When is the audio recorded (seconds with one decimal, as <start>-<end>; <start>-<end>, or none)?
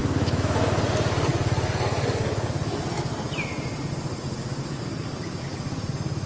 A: 0.7-6.3